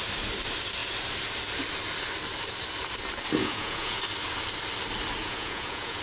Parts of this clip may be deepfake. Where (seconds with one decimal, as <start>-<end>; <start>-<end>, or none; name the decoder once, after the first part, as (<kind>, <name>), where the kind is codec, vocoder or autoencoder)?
3.4-4.0 (vocoder, Vocos); 5.2-6.0